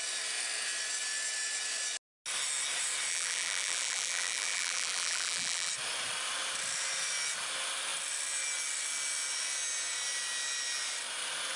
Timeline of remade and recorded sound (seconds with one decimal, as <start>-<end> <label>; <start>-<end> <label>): 0.0-3.1 recorded; 3.1-5.7 remade; 5.7-11.6 recorded